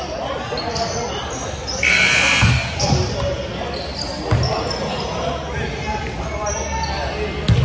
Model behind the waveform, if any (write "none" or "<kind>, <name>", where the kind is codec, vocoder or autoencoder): none